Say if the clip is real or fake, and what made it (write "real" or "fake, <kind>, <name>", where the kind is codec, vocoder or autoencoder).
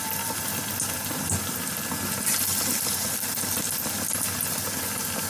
real